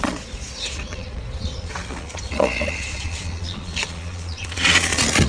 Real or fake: fake